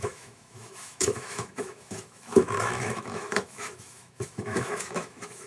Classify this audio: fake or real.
fake